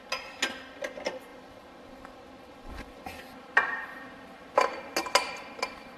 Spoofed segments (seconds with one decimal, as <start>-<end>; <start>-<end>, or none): none